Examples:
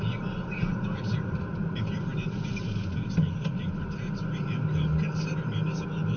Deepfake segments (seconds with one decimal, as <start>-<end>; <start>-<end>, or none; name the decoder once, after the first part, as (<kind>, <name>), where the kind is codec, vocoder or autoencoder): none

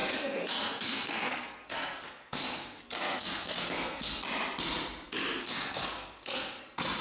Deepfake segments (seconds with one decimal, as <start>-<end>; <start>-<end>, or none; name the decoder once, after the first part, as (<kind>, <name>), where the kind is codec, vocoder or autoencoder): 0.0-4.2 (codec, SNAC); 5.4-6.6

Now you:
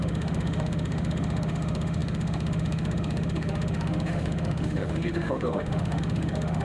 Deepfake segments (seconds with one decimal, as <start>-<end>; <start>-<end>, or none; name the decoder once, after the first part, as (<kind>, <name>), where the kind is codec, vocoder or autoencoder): 0.0-6.6 (autoencoder, DAC-VAE)

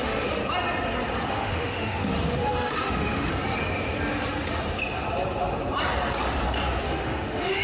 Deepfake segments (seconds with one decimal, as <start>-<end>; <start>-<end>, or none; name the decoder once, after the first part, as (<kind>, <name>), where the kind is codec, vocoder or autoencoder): 0.0-0.4 (autoencoder, DAC-VAE); 1.3-3.3; 6.8-7.6

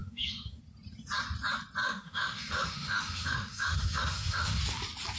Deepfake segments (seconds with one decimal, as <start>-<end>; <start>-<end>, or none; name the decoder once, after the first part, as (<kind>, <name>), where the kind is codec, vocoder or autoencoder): 0.0-0.6 (autoencoder, DAC-VAE); 1.8-4.6

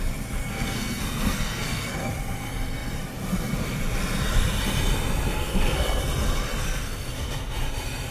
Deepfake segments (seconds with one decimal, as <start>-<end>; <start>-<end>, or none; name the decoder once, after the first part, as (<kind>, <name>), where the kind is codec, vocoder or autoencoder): 0.4-2.1 (codec, SNAC); 5.3-6.0; 6.5-7.1

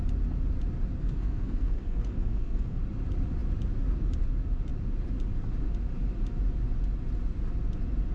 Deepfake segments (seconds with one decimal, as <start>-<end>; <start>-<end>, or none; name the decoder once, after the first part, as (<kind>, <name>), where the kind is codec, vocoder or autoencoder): 1.0-2.8 (codec, SNAC)